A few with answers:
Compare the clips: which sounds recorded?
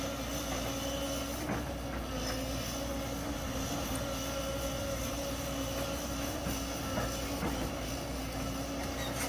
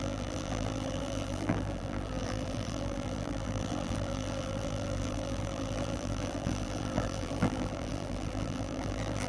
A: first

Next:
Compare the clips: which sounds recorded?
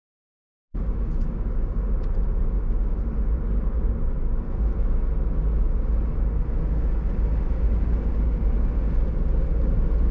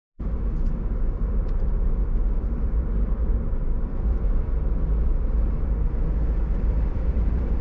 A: first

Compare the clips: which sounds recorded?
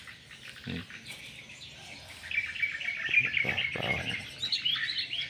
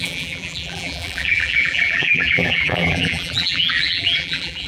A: first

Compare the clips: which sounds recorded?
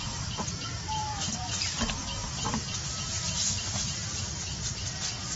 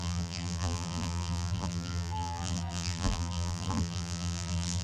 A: first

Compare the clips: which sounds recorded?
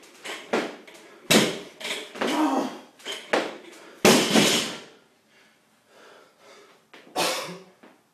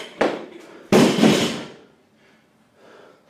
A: first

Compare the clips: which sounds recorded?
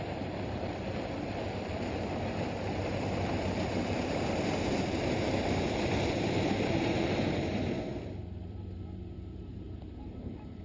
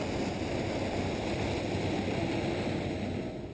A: second